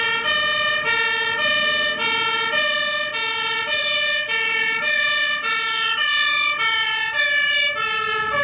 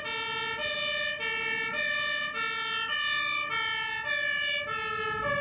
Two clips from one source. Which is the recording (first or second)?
second